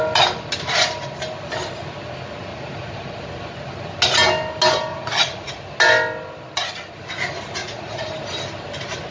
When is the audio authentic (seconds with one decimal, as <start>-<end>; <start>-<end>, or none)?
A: 0.0-2.5; 3.1-4.9; 5.5-7.6; 8.1-9.1